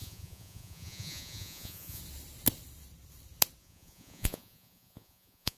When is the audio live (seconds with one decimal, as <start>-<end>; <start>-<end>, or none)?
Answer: 2.0-3.6